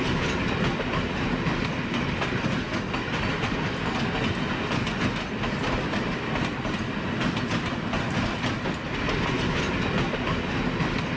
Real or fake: real